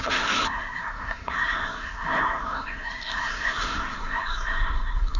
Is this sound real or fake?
fake